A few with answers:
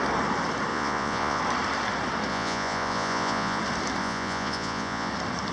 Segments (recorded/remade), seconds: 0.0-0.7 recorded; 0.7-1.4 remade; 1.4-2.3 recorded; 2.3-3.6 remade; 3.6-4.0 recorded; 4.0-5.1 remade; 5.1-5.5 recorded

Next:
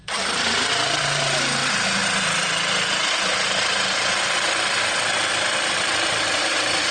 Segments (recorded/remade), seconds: 0.0-1.6 remade; 1.6-5.7 recorded; 5.7-6.9 remade

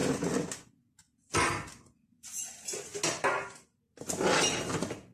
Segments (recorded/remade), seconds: 0.0-5.1 recorded

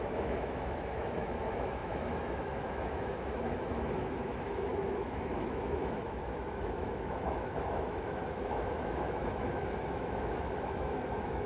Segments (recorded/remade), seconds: 0.0-11.5 remade